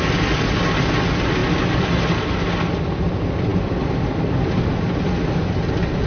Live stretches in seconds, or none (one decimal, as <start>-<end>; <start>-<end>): 0.0-6.1